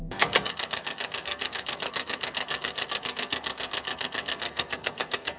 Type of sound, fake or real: fake